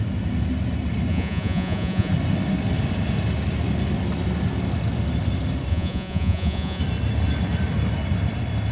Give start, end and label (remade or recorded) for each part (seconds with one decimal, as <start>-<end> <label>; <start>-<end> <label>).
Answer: 0.0-1.1 recorded; 1.1-2.1 remade; 2.1-5.7 recorded; 5.7-6.8 remade; 6.8-8.7 recorded